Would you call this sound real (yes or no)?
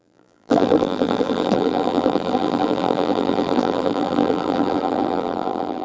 no